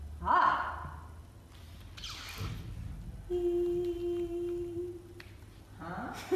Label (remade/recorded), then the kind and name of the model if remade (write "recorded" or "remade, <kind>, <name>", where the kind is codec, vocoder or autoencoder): recorded